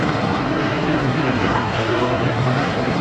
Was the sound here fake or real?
fake